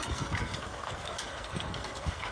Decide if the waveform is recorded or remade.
remade